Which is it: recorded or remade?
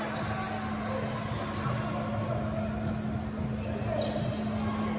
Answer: recorded